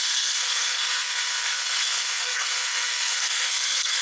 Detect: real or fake fake